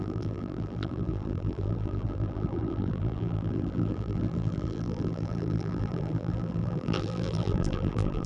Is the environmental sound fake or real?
fake